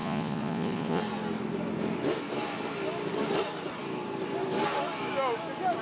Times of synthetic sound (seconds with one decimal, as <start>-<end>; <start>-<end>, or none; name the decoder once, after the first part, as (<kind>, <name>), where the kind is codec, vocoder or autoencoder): 0.0-1.0 (vocoder, Vocos)